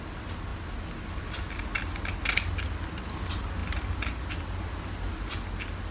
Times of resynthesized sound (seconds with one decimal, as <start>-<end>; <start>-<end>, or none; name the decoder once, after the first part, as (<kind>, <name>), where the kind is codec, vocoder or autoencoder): none